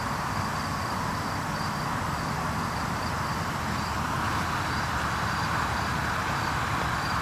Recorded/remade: recorded